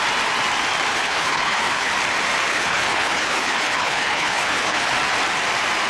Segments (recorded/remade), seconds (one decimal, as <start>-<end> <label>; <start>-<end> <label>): 0.0-0.9 recorded; 0.9-1.9 remade; 1.9-2.5 recorded; 2.5-4.9 remade; 4.9-5.9 recorded